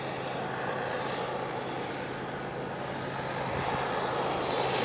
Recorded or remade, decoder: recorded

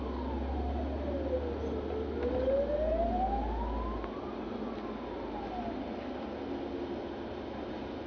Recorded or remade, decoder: recorded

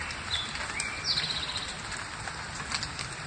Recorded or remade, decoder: recorded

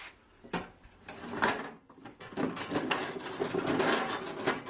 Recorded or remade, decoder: recorded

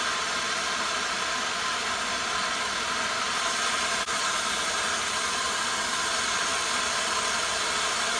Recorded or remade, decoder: recorded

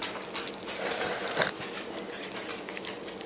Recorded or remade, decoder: recorded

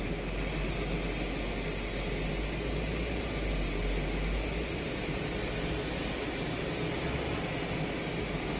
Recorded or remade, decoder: recorded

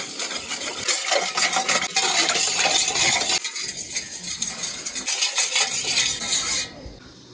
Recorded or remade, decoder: recorded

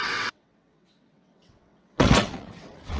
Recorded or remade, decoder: remade, vocoder, WaveNeXt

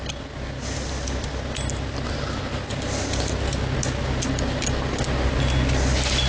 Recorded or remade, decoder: recorded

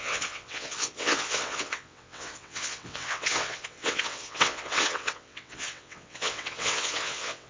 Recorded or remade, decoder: remade, vocoder, WaveNeXt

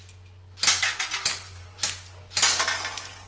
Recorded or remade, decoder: recorded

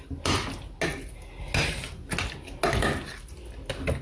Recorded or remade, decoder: recorded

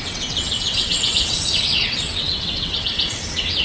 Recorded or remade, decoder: remade, vocoder, WaveNeXt